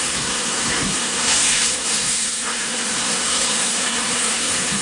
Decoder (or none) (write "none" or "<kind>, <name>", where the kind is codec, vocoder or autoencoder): codec, SNAC